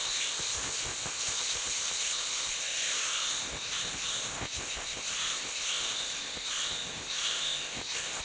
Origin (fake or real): fake